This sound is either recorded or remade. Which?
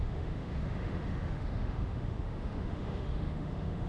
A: remade